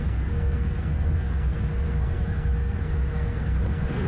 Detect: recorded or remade remade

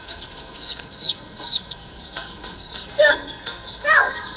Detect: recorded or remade remade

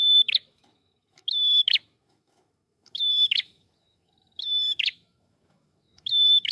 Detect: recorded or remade remade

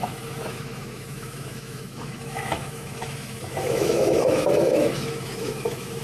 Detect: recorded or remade remade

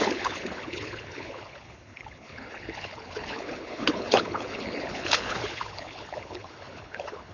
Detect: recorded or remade remade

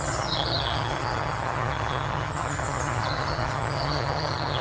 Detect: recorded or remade remade